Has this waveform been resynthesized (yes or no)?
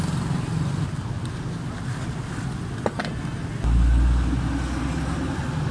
no